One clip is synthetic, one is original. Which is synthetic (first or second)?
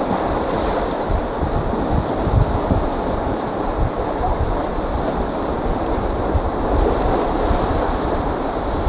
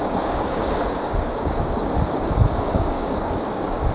second